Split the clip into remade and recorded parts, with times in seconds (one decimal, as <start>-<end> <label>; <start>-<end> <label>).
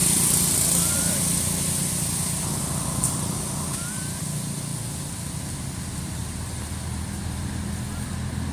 0.0-8.5 recorded